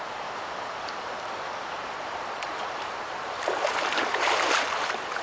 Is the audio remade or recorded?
remade